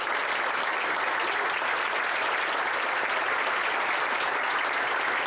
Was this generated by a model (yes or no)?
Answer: no